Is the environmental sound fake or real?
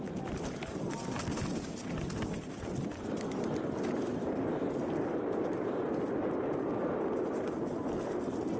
real